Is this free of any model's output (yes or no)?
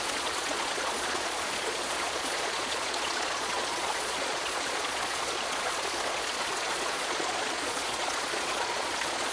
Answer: no